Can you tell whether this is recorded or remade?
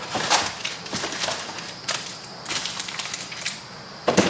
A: remade